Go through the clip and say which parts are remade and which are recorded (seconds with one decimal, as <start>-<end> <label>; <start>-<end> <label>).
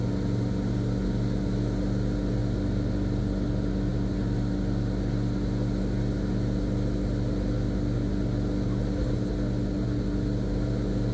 0.0-11.1 recorded